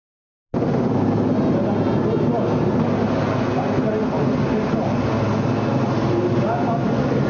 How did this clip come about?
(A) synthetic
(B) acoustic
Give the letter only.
B